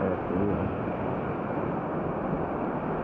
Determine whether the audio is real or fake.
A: real